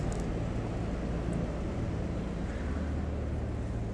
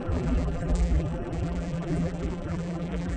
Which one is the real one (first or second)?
first